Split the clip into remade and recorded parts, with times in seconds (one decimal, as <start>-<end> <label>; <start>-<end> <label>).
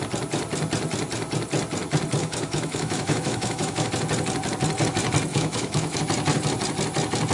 0.0-2.2 recorded; 2.2-3.9 remade; 3.9-5.3 recorded; 5.3-6.0 remade; 6.0-7.3 recorded